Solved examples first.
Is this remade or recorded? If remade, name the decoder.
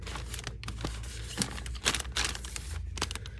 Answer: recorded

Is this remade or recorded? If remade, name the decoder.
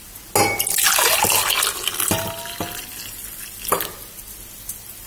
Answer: recorded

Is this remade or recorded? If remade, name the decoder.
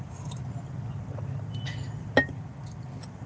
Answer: recorded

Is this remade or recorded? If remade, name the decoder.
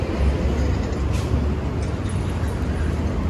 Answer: recorded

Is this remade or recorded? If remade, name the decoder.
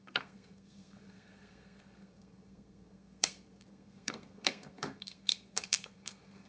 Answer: remade, codec, SNAC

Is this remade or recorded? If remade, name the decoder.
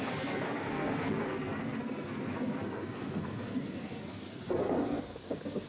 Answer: remade, codec, SNAC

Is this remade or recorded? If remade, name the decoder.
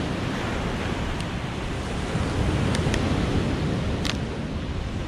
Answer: recorded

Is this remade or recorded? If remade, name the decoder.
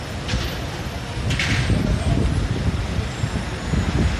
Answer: recorded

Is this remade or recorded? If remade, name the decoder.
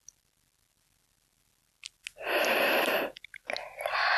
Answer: recorded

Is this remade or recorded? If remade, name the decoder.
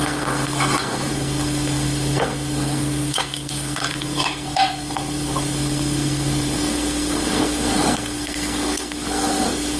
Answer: remade, codec, SNAC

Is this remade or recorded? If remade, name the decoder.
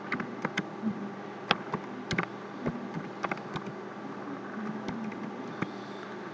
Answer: recorded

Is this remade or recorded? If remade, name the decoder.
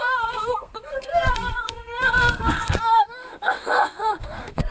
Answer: remade, codec, SNAC